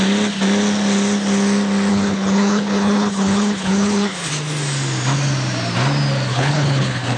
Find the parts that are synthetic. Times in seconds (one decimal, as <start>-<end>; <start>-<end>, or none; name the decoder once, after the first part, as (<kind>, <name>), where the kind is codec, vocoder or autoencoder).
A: 1.9-4.3 (codec, HILCodec); 6.3-7.2